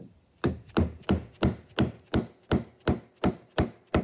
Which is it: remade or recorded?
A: recorded